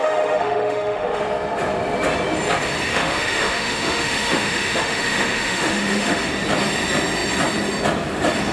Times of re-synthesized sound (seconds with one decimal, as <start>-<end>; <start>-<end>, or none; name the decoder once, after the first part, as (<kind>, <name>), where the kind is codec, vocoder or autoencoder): 0.0-1.2 (autoencoder, DAC-VAE); 2.9-6.2